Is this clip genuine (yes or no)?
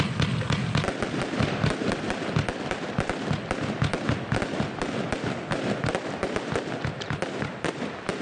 yes